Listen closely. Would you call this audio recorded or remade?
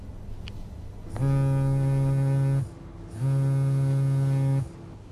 recorded